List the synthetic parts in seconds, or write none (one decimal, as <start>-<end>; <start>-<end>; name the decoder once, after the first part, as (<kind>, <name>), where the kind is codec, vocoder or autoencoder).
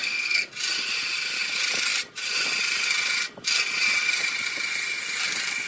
0.0-0.5 (codec, SNAC)